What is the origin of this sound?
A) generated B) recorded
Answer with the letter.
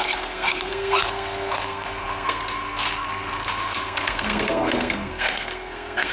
A